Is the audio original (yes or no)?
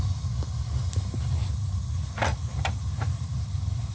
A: yes